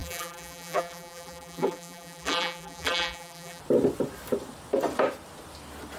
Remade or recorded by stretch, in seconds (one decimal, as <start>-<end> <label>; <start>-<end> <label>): 0.0-3.6 remade; 3.6-6.0 recorded